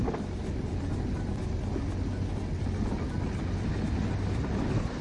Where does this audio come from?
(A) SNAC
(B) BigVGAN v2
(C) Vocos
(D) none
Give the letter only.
D